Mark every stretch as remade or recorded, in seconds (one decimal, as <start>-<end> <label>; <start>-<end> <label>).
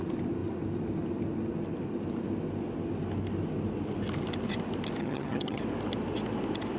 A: 0.0-5.0 recorded; 5.0-5.6 remade; 5.6-6.8 recorded